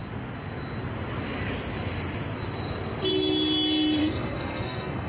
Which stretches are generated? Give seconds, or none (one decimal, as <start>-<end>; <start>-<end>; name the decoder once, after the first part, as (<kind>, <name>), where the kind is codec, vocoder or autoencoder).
4.0-5.1 (codec, SNAC)